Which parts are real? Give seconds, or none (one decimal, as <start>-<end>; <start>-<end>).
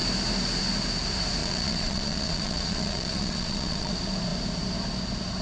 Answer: 0.0-1.4; 3.9-5.4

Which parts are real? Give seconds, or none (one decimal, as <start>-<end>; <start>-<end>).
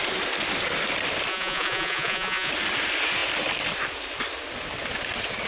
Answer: 0.0-1.3; 2.5-5.5